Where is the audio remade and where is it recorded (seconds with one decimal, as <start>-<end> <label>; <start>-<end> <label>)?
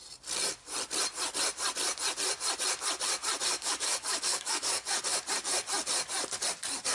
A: 0.0-3.5 recorded; 3.5-5.0 remade; 5.0-6.9 recorded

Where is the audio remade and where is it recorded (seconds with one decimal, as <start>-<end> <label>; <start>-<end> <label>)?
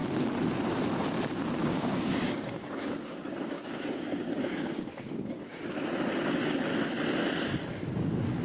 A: 0.0-1.6 recorded; 1.6-5.6 remade; 5.6-8.4 recorded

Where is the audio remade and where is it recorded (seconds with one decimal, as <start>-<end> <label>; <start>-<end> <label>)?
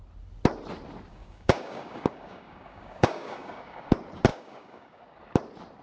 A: 0.0-1.1 recorded; 1.1-3.9 remade; 3.9-4.3 recorded; 4.3-5.2 remade; 5.2-5.8 recorded